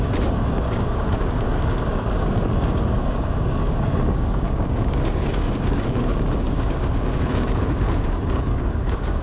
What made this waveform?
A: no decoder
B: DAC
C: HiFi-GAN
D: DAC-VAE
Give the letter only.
B